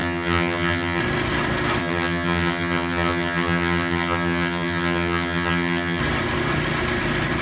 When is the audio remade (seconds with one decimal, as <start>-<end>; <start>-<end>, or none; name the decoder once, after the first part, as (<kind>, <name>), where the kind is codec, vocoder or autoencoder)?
0.0-1.0 (vocoder, HiFi-GAN); 1.8-6.0